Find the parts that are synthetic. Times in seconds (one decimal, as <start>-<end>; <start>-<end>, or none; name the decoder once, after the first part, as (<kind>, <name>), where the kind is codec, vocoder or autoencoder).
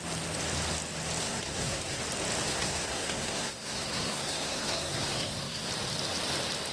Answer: 1.2-2.0 (codec, SNAC); 2.5-5.7